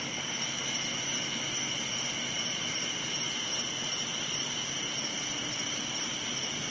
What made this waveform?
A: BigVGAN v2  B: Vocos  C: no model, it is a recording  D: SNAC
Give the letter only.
C